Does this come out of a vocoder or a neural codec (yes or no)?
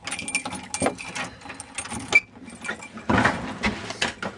no